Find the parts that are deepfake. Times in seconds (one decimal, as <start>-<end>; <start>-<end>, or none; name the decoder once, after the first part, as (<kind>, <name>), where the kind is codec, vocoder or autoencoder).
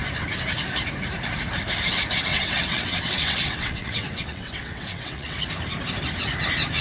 2.3-5.4 (vocoder, WaveNeXt)